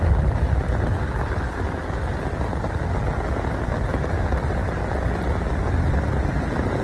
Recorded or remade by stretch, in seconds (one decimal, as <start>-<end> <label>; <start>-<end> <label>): 0.0-6.8 recorded